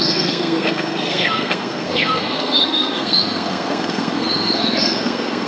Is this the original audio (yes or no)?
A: no